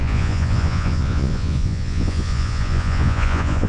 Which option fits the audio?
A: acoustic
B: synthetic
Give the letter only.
B